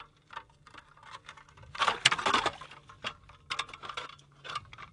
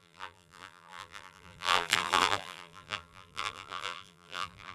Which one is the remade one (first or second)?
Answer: second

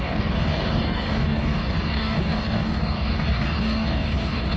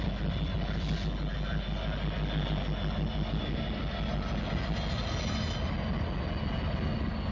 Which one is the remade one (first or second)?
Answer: first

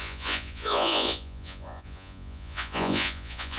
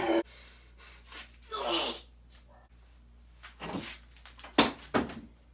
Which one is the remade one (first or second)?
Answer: first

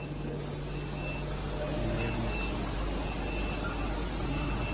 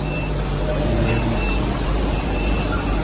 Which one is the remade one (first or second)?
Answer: second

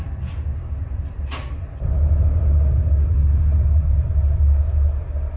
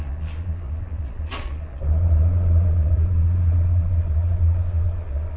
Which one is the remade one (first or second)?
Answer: second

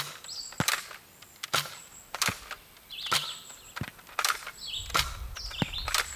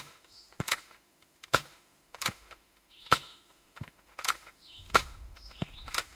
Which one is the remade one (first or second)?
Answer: second